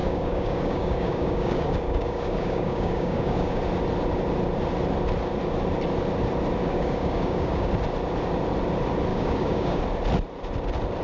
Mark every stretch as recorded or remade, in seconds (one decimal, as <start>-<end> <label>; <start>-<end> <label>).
0.0-3.6 remade; 3.6-6.6 recorded; 6.6-7.7 remade; 7.7-9.1 recorded; 9.1-9.8 remade; 9.8-11.0 recorded